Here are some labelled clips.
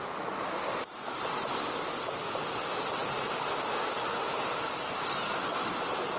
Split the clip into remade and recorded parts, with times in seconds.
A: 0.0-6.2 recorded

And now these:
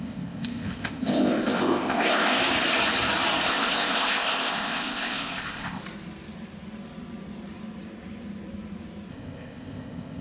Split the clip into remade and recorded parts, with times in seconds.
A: 0.0-2.4 remade; 2.4-3.5 recorded; 3.5-5.8 remade; 5.8-9.1 recorded; 9.1-10.2 remade

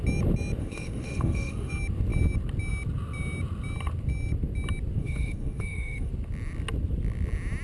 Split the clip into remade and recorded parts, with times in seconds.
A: 0.0-0.6 recorded; 0.6-1.7 remade; 1.7-5.0 recorded; 5.0-6.1 remade; 6.1-7.6 recorded

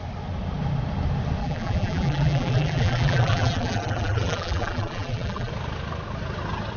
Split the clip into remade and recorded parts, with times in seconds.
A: 0.0-1.4 recorded; 1.4-5.5 remade; 5.5-6.8 recorded

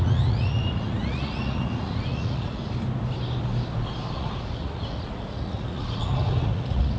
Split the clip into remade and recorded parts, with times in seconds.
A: 0.0-2.6 remade; 2.6-4.1 recorded; 4.1-7.0 remade

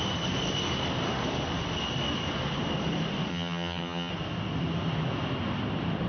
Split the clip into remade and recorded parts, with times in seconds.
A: 0.0-3.3 recorded; 3.3-4.1 remade; 4.1-6.1 recorded

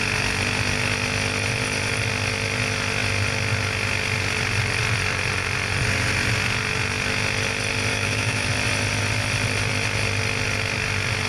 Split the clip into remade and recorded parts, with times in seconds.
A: 0.0-7.9 recorded; 7.9-8.5 remade; 8.5-11.3 recorded